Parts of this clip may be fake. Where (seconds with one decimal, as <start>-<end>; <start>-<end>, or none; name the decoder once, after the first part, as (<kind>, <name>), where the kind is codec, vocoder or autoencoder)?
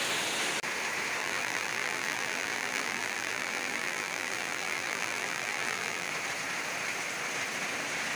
1.2-6.1 (vocoder, BigVGAN v2)